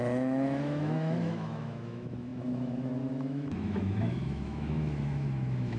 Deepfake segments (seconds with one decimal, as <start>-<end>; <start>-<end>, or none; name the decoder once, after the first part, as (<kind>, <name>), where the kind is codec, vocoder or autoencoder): 0.0-5.8 (autoencoder, DAC-VAE)